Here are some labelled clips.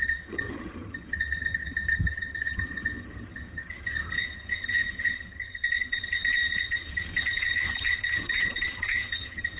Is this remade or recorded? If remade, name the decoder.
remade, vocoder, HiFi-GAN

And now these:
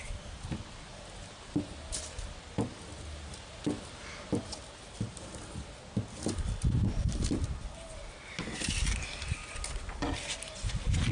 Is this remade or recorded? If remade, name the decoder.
recorded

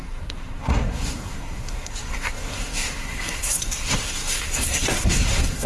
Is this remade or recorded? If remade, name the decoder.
remade, codec, SNAC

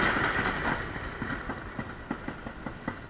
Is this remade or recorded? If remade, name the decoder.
recorded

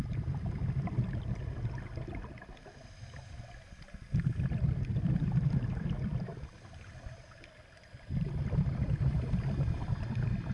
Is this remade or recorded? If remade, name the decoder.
remade, vocoder, BigVGAN v2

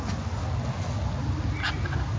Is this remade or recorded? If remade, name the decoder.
recorded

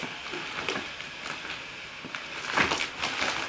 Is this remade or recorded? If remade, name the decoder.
recorded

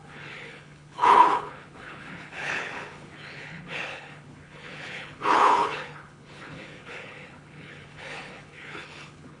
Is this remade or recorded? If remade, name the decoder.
remade, codec, HILCodec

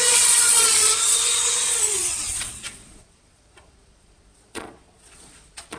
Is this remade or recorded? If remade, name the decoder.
remade, vocoder, Vocos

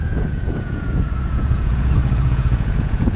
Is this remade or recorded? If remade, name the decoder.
remade, vocoder, Vocos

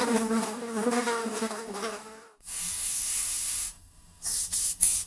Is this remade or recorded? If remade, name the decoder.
remade, codec, DAC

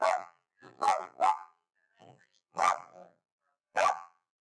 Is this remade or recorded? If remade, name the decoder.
remade, vocoder, BigVGAN v2